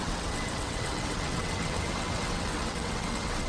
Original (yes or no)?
no